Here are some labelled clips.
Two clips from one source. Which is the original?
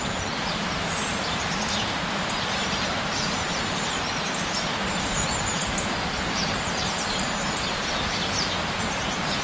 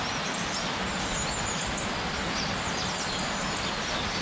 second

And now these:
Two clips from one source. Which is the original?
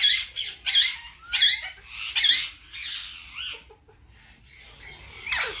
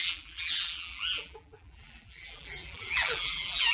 first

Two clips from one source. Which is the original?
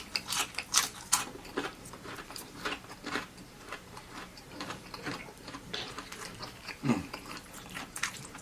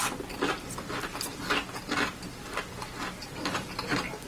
second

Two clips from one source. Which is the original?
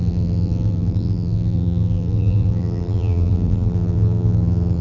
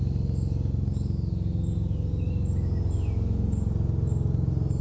second